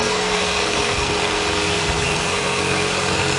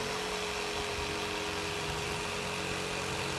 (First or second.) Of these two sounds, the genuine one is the second